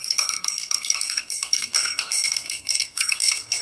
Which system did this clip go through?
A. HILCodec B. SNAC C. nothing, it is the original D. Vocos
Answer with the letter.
B